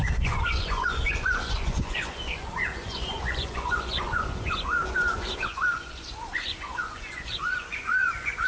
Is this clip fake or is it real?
fake